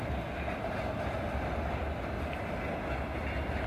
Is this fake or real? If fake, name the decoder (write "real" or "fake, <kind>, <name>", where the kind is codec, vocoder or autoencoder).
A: real